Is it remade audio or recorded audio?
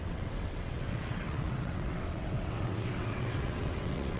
remade